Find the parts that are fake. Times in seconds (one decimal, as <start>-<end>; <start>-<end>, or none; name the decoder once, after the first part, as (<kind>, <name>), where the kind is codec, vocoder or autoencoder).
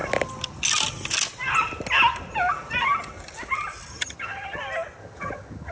3.9-4.6 (vocoder, HiFi-GAN); 5.0-5.7